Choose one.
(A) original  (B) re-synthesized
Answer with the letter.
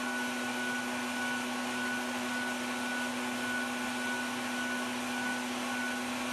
A